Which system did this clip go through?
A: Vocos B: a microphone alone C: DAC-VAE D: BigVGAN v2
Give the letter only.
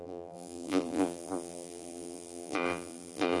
D